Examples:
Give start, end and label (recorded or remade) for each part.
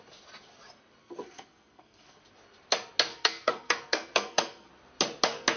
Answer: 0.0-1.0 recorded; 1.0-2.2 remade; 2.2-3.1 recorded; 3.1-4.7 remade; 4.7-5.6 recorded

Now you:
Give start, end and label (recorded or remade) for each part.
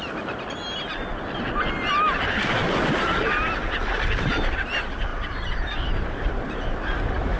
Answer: 0.0-5.1 recorded; 5.1-6.6 remade; 6.6-7.4 recorded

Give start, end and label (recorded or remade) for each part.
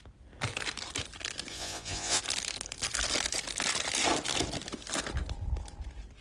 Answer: 0.0-1.5 recorded; 1.5-2.2 remade; 2.2-6.2 recorded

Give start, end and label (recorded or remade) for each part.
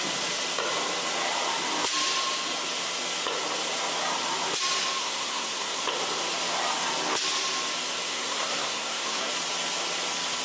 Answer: 0.0-5.0 recorded; 5.0-5.8 remade; 5.8-8.1 recorded; 8.1-9.3 remade; 9.3-10.4 recorded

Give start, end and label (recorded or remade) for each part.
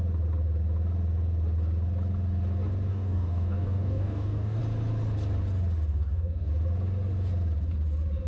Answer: 0.0-2.9 recorded; 2.9-4.6 remade; 4.6-5.9 recorded; 5.9-6.5 remade; 6.5-8.3 recorded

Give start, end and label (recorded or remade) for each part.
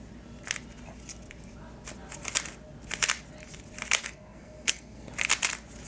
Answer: 0.0-4.0 recorded; 4.0-5.1 remade; 5.1-5.9 recorded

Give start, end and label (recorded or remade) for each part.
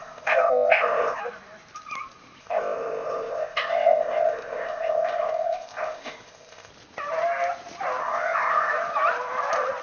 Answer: 0.0-1.2 remade; 1.2-2.4 recorded; 2.4-6.7 remade; 6.7-8.0 recorded; 8.0-8.7 remade; 8.7-9.8 recorded